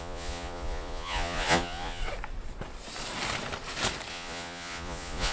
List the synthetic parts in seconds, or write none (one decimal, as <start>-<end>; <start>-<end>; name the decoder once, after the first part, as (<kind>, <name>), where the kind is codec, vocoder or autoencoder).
0.0-2.0 (vocoder, Vocos); 4.1-5.3